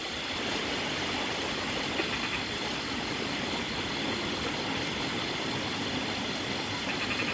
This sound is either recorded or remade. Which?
recorded